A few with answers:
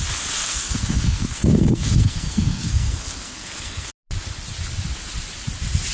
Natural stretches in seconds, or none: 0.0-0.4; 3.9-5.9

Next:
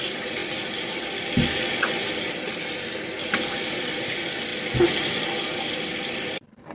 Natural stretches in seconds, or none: 0.4-3.3; 4.5-5.2